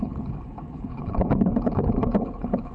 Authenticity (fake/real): fake